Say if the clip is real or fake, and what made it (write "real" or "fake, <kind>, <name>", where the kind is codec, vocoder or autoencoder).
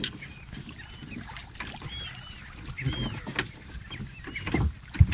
real